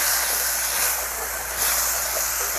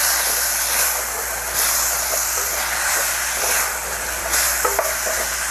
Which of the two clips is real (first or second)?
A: first